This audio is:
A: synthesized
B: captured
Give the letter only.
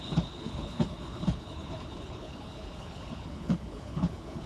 A